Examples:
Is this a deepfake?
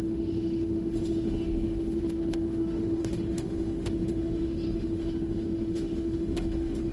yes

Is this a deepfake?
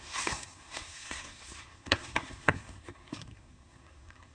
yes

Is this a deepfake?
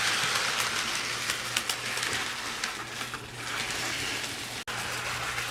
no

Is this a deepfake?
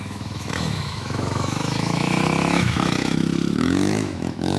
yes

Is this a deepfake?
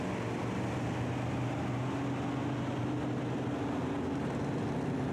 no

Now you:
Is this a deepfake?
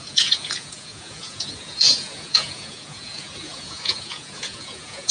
yes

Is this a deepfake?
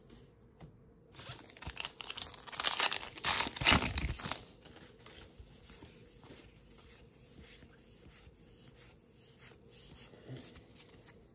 no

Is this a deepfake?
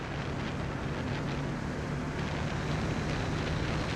no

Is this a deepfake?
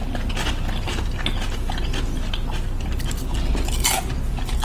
no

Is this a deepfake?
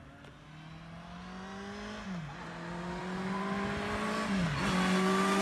no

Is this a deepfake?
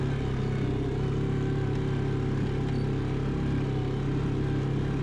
no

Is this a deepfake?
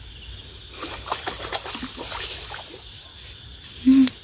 no